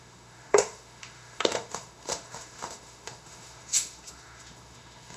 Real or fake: fake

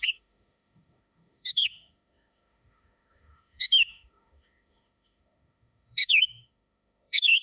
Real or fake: fake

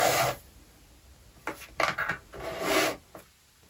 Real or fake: real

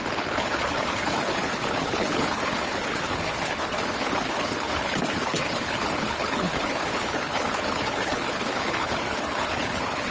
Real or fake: fake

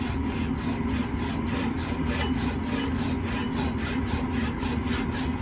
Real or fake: real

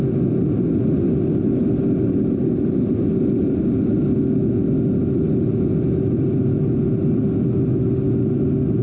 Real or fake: real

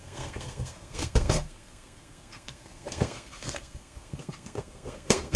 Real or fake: fake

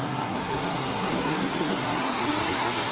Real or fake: fake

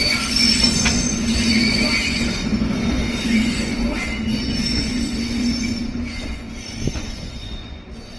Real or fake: fake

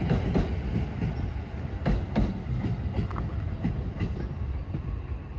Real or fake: real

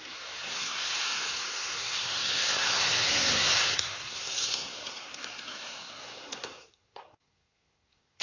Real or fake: fake